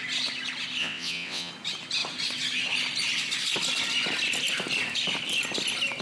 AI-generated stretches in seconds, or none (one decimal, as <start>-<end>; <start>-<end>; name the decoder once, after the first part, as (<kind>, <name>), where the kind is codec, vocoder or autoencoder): 0.8-1.5 (vocoder, WaveNeXt)